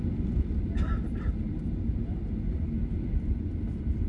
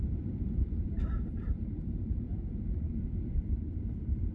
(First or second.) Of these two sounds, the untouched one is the first